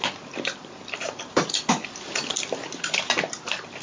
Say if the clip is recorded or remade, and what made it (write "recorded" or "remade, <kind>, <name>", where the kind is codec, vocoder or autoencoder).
recorded